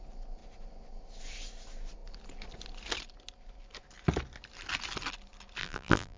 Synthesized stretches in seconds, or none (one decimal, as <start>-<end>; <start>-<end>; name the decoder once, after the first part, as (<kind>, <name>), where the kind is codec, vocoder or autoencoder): 5.6-6.2 (vocoder, BigVGAN v2)